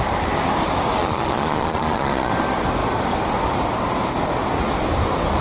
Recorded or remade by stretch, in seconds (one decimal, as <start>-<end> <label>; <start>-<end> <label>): 0.0-1.0 recorded; 1.0-2.3 remade; 2.3-5.4 recorded